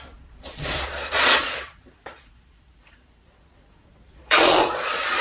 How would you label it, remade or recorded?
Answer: remade